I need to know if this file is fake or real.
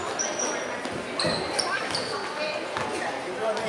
real